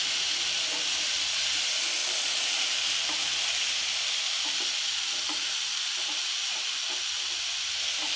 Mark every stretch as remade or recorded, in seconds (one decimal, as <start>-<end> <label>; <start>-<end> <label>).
0.0-2.0 recorded; 2.0-5.6 remade; 5.6-8.2 recorded